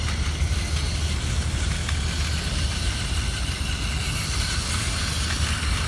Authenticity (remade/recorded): recorded